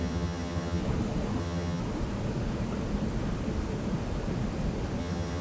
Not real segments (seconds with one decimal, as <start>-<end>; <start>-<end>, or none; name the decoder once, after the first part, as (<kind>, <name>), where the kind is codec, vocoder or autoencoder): 0.0-0.8 (vocoder, HiFi-GAN); 1.4-1.8; 5.0-5.4